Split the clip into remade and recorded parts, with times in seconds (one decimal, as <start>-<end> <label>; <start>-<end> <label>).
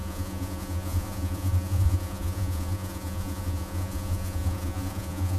0.0-5.4 remade